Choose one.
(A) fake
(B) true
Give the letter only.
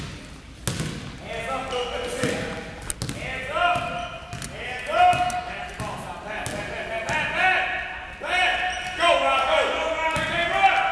B